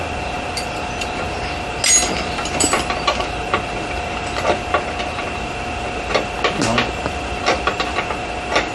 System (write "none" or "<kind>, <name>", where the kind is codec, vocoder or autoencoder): none